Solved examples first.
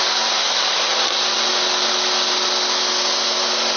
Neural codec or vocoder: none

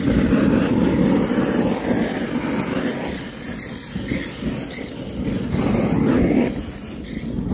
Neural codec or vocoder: none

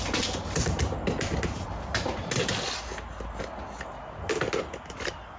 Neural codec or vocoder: none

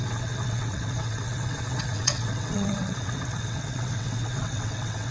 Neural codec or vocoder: vocoder, WaveNeXt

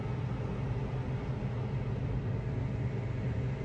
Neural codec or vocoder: none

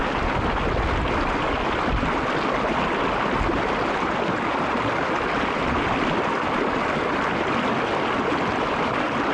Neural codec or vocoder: none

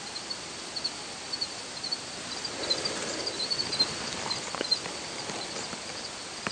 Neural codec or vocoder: none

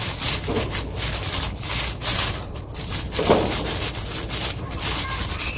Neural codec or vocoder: none